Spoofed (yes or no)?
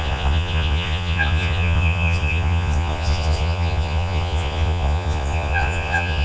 yes